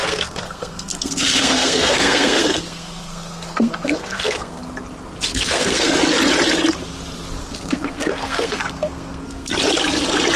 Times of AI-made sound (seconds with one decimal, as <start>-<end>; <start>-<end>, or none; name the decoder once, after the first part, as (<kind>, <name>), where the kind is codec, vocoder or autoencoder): 0.0-4.6 (codec, SNAC); 5.3-5.9; 7.4-9.5